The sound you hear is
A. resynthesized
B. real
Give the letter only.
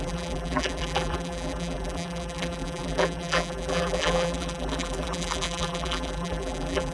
A